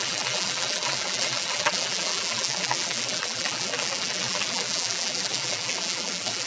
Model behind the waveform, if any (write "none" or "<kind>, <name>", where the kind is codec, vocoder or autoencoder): vocoder, BigVGAN v2